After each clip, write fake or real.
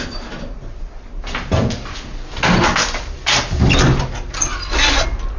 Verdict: real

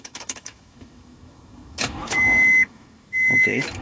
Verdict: fake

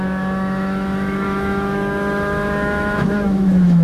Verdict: fake